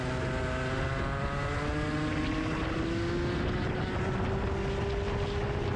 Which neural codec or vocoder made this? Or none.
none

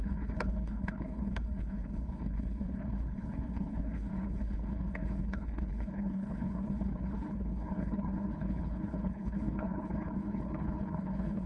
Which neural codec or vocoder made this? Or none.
codec, HILCodec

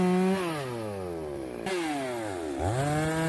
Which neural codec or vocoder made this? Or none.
none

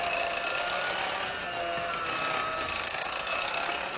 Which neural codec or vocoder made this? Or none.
none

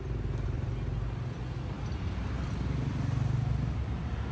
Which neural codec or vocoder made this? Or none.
none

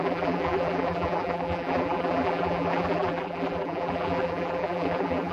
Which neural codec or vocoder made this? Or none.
vocoder, BigVGAN v2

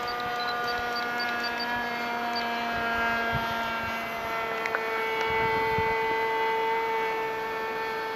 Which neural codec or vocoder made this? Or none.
none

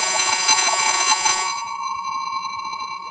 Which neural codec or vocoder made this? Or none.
vocoder, Vocos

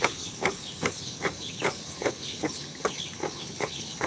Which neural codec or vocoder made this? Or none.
codec, HILCodec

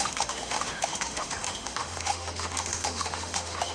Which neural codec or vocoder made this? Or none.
autoencoder, DAC-VAE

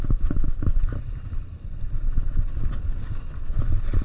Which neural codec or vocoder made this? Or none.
none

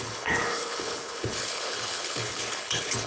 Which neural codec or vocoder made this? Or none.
codec, HILCodec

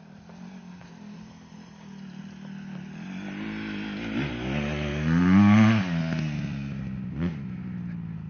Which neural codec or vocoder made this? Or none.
none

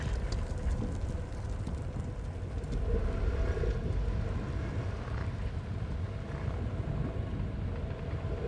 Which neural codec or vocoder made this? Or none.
none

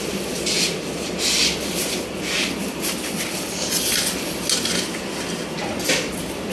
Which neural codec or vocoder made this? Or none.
none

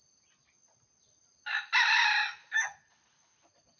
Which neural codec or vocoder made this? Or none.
none